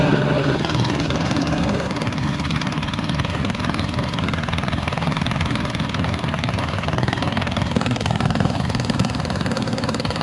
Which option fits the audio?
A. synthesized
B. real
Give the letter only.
A